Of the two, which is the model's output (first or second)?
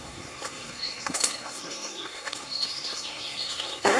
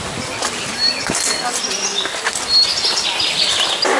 first